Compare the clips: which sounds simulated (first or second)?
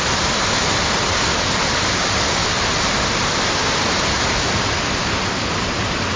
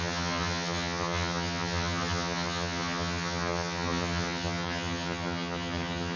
second